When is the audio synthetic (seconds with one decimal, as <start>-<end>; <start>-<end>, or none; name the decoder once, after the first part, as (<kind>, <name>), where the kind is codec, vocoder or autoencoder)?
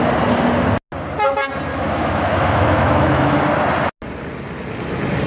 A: 1.7-3.4 (autoencoder, DAC-VAE)